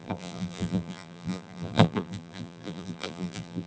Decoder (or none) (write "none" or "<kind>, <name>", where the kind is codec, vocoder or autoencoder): vocoder, BigVGAN v2